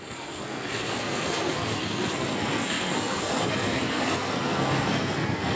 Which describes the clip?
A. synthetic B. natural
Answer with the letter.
A